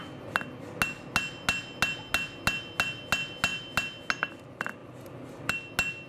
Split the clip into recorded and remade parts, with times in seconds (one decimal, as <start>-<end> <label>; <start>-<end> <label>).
0.0-6.1 recorded